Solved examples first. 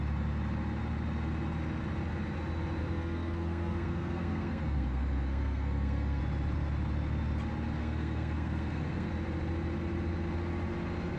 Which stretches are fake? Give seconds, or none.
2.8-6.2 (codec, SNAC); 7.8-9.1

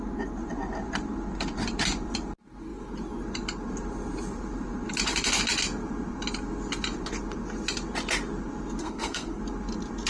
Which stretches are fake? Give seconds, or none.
8.8-9.4 (codec, SNAC)

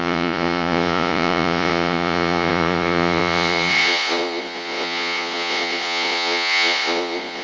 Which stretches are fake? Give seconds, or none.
0.0-7.4 (vocoder, Vocos)

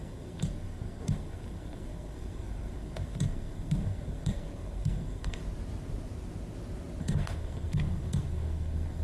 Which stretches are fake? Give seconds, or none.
0.0-5.4 (codec, SNAC); 7.0-9.0

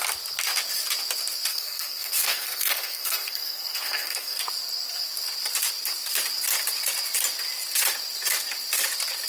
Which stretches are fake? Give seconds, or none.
1.5-4.4 (codec, SNAC)

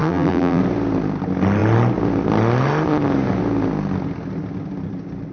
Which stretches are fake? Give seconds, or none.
0.0-0.6 (vocoder, BigVGAN v2)

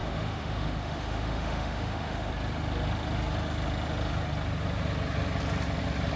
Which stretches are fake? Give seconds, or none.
0.0-2.3 (autoencoder, DAC-VAE)